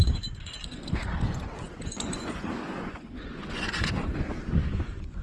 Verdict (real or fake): fake